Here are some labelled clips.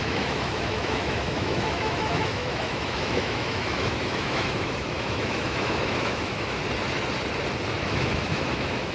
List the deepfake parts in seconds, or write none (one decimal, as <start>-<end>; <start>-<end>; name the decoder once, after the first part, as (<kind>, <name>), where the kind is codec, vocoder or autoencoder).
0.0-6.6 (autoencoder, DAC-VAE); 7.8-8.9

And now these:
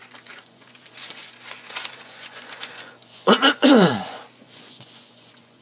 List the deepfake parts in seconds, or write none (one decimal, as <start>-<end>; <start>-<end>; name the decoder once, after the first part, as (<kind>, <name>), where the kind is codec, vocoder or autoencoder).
0.0-5.6 (vocoder, Vocos)

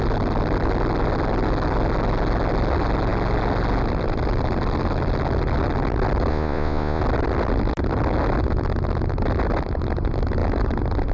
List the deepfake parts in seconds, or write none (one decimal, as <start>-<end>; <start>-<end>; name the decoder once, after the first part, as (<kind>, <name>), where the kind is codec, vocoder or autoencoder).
6.3-7.0 (vocoder, Vocos)